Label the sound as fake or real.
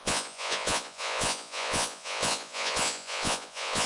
fake